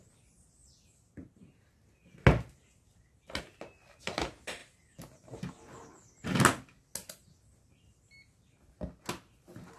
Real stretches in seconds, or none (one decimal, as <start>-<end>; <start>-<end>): 0.0-9.8